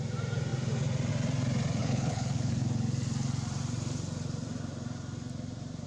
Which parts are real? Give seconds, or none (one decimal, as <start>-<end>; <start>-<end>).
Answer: 0.0-1.8; 2.5-5.9